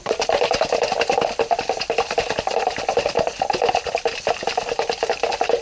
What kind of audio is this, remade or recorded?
remade